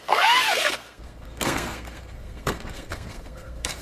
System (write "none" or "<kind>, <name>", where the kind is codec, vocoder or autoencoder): codec, SNAC